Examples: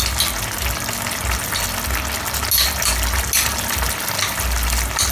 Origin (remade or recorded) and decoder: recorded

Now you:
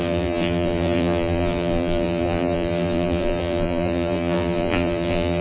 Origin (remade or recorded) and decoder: remade, vocoder, BigVGAN v2